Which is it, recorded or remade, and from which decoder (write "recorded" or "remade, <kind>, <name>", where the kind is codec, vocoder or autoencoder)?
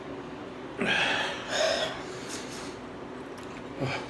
recorded